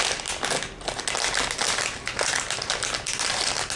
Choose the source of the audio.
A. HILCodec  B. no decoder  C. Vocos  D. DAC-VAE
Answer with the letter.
B